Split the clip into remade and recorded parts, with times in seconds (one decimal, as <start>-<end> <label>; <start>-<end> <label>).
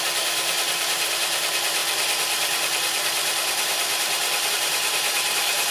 0.0-1.8 remade; 1.8-4.5 recorded; 4.5-5.7 remade